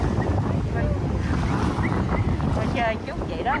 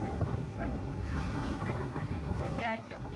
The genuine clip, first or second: first